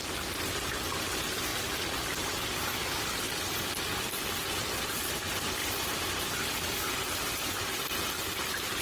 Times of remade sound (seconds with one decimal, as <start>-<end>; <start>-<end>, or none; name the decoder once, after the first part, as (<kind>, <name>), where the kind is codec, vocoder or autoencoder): 1.5-2.6 (vocoder, BigVGAN v2); 5.6-6.9